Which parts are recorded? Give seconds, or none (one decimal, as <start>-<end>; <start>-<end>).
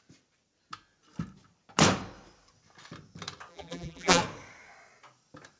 0.0-3.5; 4.2-5.6